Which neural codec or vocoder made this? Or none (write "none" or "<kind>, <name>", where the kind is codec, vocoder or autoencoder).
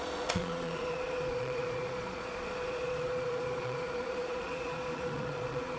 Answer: vocoder, Vocos